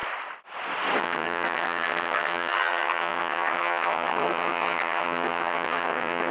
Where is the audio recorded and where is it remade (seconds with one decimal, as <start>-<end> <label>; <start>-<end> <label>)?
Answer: 0.0-1.0 recorded; 1.0-6.3 remade